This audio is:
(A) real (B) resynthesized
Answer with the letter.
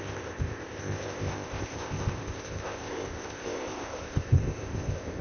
B